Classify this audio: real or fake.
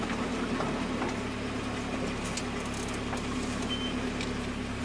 real